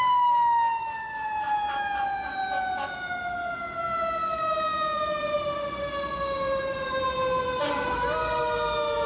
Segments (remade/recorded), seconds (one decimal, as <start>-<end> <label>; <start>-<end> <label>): 0.0-4.3 recorded; 4.3-7.9 remade; 7.9-9.1 recorded